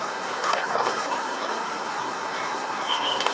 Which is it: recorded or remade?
remade